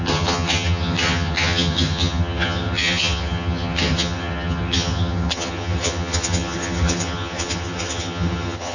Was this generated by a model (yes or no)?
yes